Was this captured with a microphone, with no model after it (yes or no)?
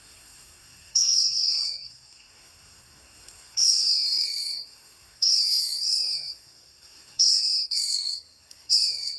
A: no